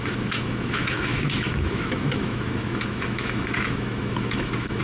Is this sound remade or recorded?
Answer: remade